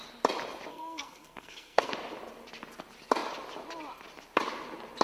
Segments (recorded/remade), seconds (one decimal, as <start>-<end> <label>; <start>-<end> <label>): 0.0-0.7 recorded; 0.7-1.9 remade; 1.9-5.0 recorded